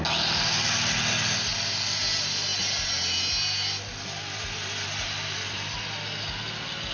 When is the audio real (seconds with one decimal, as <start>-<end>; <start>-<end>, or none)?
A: 0.0-6.9